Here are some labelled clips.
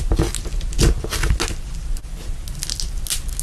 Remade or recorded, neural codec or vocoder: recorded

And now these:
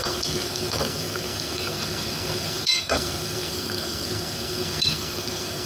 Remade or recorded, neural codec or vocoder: remade, codec, SNAC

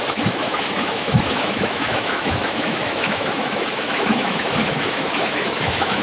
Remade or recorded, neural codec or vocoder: remade, autoencoder, DAC-VAE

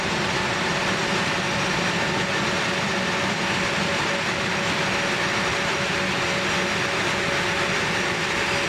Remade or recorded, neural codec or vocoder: recorded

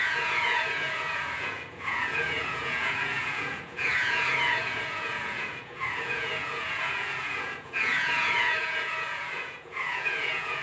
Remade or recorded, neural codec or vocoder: remade, vocoder, Vocos